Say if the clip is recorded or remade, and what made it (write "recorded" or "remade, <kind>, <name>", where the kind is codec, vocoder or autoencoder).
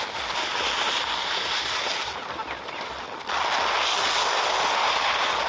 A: recorded